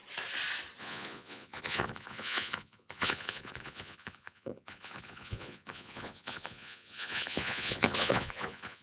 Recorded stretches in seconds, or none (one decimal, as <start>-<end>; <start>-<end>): 0.0-0.8